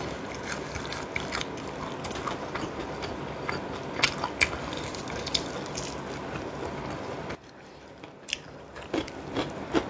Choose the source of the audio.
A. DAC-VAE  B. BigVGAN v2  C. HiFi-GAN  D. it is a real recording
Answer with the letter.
D